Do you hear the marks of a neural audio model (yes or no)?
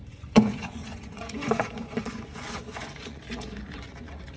yes